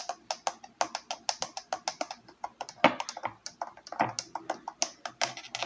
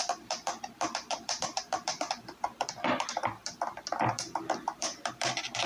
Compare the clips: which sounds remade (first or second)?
second